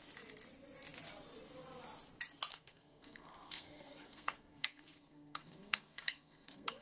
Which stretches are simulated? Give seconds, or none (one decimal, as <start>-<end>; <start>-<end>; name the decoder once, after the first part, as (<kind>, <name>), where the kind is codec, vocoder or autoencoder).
2.5-6.8 (codec, SNAC)